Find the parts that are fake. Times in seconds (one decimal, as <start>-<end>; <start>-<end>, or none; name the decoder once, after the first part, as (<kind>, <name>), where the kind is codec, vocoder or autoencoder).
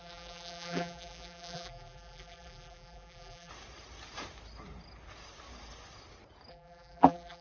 0.0-3.5 (vocoder, BigVGAN v2); 6.5-7.4